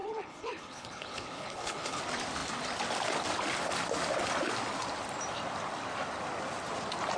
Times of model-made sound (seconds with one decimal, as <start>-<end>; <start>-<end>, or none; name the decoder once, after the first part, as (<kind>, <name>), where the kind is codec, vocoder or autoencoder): 0.0-2.0 (codec, HILCodec)